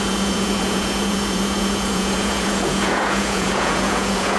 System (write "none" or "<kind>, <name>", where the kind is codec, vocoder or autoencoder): vocoder, Vocos